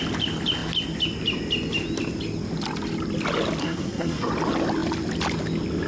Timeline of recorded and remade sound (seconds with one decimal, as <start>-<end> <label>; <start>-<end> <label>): 0.0-3.6 recorded; 3.6-4.3 remade; 4.3-5.9 recorded